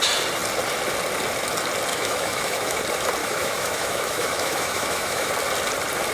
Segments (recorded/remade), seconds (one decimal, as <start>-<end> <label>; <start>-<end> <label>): 0.0-1.9 recorded; 1.9-2.8 remade; 2.8-3.2 recorded; 3.2-5.3 remade; 5.3-6.1 recorded